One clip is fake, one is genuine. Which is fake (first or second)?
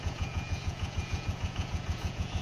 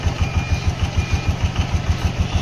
first